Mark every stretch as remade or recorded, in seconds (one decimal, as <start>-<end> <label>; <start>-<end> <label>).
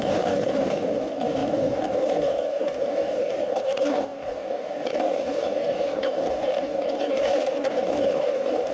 0.0-8.7 remade